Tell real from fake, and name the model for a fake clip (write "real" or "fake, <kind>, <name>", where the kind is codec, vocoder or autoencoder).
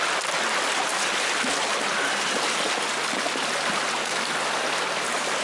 real